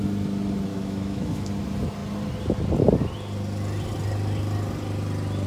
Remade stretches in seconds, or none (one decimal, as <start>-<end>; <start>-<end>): 0.7-1.5